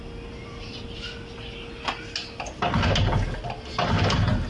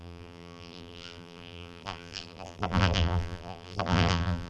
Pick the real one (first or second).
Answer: first